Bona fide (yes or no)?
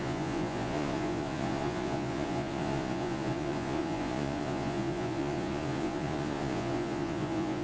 no